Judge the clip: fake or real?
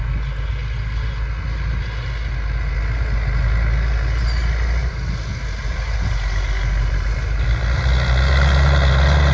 real